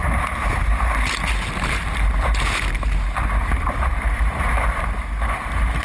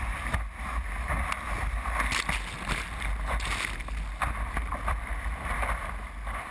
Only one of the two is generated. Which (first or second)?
first